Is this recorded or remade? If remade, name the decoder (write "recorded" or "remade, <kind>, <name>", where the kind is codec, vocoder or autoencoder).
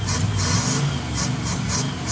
recorded